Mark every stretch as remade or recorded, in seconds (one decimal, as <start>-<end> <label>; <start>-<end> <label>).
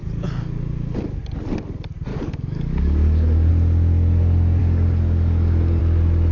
0.0-2.1 recorded; 2.1-3.5 remade; 3.5-4.6 recorded; 4.6-5.8 remade; 5.8-6.3 recorded